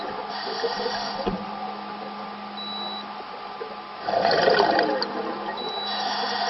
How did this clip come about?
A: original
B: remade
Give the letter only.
A